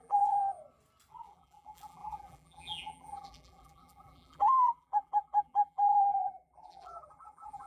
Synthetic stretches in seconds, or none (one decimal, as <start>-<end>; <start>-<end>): 0.0-0.4; 1.1-7.7